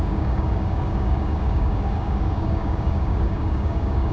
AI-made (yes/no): yes